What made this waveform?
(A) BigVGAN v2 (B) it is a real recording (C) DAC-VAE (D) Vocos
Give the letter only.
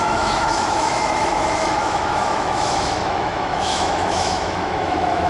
C